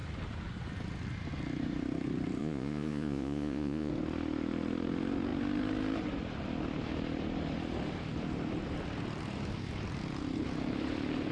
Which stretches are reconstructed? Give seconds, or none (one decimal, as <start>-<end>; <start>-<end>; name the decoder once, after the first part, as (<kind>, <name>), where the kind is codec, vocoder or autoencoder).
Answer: 2.4-3.9 (vocoder, Vocos)